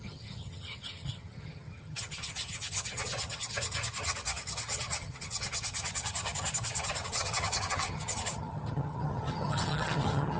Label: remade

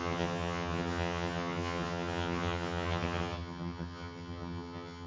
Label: remade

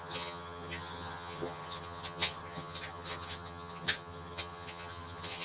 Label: remade